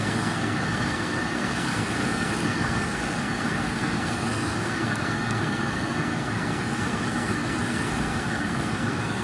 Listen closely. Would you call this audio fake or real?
fake